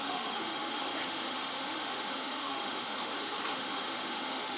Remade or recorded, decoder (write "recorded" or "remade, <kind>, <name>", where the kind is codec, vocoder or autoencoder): remade, autoencoder, DAC-VAE